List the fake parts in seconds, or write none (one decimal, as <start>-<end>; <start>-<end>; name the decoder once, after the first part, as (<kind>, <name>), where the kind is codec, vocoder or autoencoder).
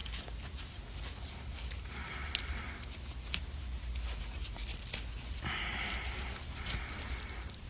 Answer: none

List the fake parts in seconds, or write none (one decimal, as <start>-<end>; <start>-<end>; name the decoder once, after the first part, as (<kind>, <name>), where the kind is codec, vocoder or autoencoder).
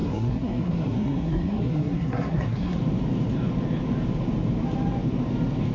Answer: 0.0-2.8 (codec, SNAC)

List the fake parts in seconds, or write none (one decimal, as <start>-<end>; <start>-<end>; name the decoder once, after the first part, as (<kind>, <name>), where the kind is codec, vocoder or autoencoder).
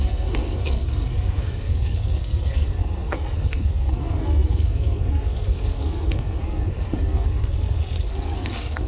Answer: 0.0-8.9 (codec, SNAC)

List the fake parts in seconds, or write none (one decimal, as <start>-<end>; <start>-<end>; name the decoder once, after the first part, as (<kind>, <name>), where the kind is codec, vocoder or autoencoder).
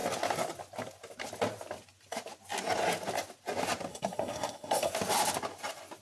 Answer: 3.9-4.9 (codec, SNAC)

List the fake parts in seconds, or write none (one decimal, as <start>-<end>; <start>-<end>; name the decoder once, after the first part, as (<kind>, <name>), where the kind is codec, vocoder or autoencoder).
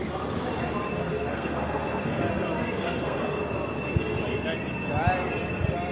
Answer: 1.0-2.2 (codec, SNAC); 2.6-3.4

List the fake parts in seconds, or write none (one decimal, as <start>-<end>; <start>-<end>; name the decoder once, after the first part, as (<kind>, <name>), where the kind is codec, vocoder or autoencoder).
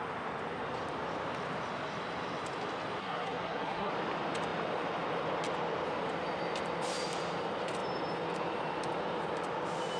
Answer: 3.0-3.9 (codec, SNAC)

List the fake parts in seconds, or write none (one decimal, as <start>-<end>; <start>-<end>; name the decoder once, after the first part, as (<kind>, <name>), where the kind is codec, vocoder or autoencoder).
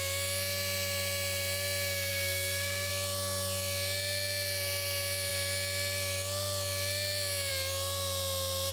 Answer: 2.1-2.9 (codec, SNAC)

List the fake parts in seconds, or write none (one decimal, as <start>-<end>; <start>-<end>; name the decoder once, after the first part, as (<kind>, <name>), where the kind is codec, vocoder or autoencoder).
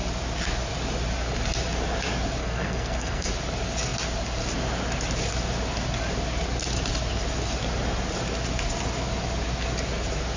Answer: 2.4-3.3 (codec, SNAC)